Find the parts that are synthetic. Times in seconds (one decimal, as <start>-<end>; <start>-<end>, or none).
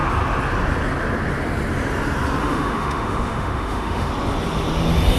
2.4-4.1